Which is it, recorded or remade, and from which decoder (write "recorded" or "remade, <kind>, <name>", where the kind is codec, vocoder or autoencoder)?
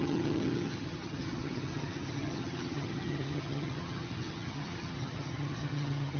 remade, vocoder, HiFi-GAN